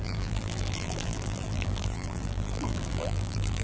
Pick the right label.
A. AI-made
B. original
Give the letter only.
A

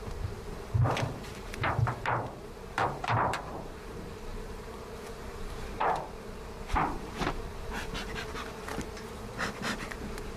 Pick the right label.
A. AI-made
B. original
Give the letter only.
A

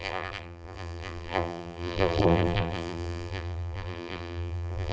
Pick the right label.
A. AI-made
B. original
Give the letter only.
A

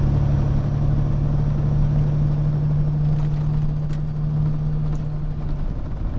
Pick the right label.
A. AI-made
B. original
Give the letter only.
B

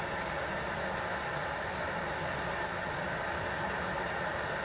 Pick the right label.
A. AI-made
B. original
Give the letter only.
B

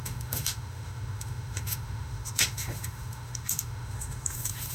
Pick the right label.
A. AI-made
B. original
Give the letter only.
A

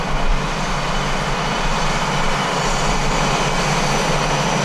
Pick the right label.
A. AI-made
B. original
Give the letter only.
B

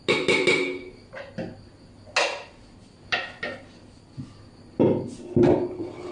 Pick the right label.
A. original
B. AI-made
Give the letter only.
A